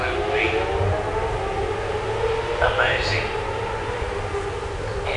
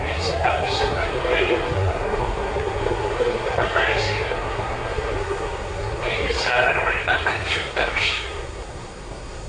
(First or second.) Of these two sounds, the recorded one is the first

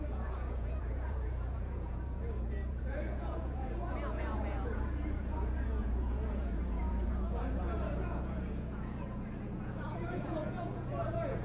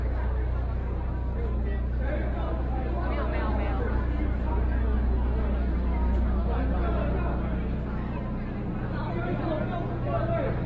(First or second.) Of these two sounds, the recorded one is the second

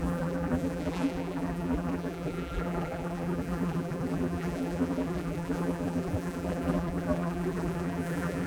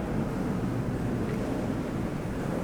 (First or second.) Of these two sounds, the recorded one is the second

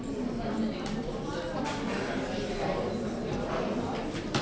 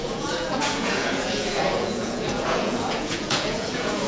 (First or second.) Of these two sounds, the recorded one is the first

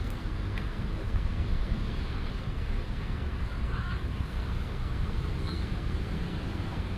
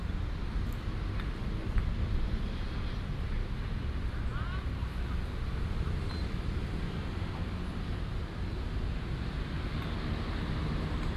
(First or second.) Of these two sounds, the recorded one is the second